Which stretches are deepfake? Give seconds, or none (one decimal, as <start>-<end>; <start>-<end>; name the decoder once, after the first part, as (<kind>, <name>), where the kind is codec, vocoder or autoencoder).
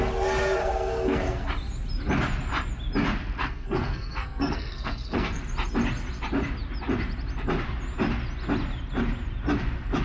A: 0.6-1.5 (codec, SNAC); 3.4-5.4